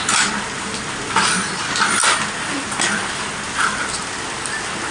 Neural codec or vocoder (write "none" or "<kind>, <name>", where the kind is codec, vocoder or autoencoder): none